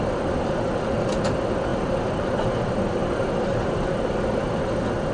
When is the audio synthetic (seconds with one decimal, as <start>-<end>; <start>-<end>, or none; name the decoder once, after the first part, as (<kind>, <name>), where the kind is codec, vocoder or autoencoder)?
1.7-2.5 (vocoder, BigVGAN v2); 3.0-4.6